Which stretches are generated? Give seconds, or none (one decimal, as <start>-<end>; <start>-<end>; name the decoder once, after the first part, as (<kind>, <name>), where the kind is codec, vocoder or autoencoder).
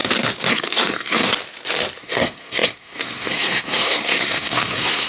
0.5-1.3 (codec, SNAC); 2.0-5.1